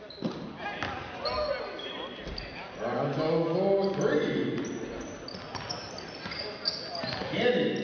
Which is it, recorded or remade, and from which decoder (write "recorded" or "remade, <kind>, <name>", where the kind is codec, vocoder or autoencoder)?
recorded